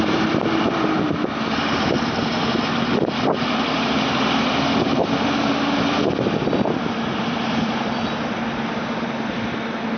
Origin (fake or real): fake